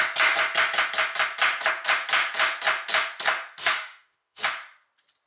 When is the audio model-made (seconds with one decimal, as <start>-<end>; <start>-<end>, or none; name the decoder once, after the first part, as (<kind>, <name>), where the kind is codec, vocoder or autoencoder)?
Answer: 3.6-4.4 (autoencoder, DAC-VAE)